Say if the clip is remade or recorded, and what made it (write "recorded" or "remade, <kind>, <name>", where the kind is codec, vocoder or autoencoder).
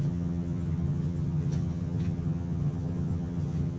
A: remade, vocoder, HiFi-GAN